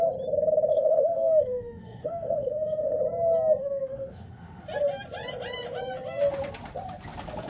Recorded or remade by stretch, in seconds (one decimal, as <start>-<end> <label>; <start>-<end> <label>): 0.0-0.7 recorded; 0.7-3.0 remade; 3.0-3.6 recorded; 3.6-4.6 remade; 4.6-7.5 recorded